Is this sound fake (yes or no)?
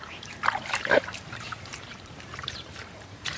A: yes